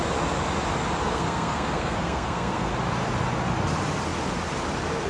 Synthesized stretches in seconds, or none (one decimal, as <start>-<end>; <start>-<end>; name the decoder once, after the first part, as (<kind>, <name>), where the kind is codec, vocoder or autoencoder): 1.0-2.7 (codec, SNAC)